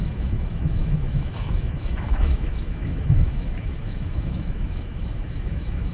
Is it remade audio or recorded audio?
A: remade